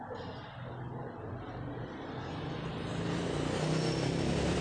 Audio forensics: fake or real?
real